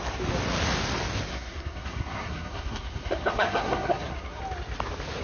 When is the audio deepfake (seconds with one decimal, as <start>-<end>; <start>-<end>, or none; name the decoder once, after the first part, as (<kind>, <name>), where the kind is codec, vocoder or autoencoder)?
1.3-4.4 (codec, SNAC)